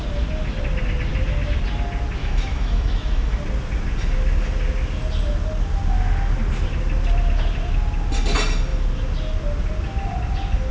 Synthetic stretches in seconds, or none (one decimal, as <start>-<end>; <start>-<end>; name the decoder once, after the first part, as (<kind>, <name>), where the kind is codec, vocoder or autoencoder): 2.2-3.4 (autoencoder, DAC-VAE)

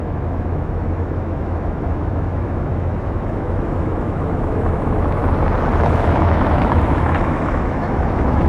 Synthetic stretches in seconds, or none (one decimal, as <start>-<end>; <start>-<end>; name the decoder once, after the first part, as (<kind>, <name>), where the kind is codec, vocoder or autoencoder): 0.0-5.2 (autoencoder, DAC-VAE); 5.8-8.5

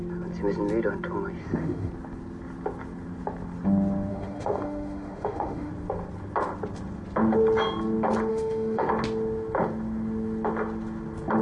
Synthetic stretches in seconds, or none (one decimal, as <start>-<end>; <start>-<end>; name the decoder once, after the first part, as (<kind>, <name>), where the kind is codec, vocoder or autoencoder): 1.4-1.9 (autoencoder, DAC-VAE); 4.1-5.7; 8.3-8.9

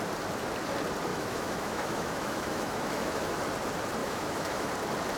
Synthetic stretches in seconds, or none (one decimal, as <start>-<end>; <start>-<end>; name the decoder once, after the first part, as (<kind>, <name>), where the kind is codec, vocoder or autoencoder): 1.1-3.4 (autoencoder, DAC-VAE); 4.0-4.7